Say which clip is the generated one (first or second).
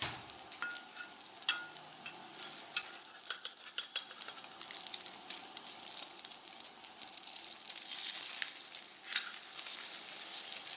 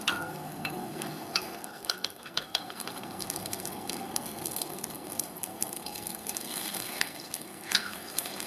second